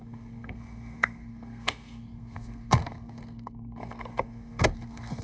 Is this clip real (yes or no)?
no